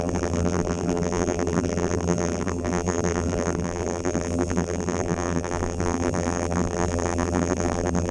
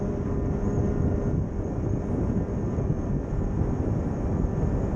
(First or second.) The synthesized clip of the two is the first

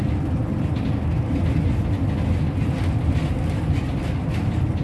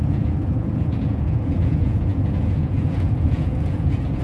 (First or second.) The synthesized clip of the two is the second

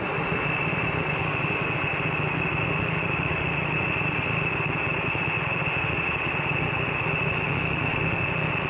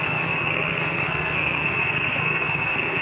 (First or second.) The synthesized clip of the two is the second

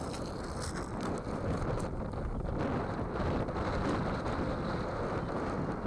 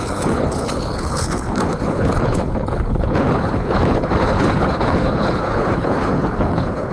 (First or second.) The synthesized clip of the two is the second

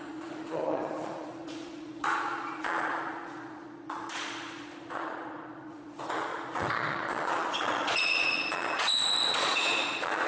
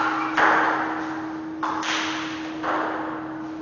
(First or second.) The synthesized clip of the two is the first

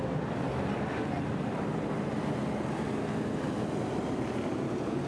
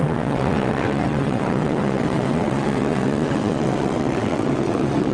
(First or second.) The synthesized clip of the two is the second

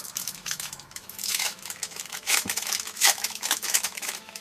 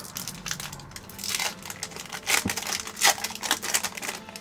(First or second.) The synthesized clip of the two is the first